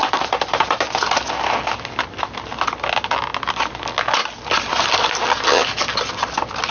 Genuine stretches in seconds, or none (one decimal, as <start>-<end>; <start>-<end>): 0.6-6.7